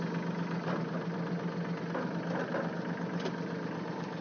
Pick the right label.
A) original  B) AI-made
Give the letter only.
A